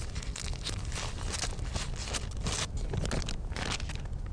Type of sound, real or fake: real